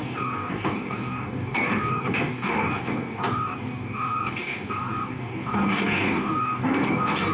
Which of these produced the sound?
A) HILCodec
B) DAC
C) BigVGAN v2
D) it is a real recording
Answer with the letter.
B